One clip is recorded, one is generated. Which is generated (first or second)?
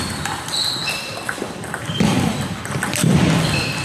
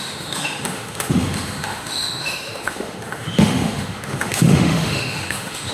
second